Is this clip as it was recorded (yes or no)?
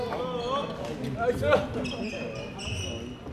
yes